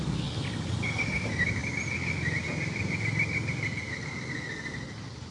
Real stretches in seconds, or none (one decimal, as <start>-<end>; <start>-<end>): 0.0-1.6; 2.5-5.3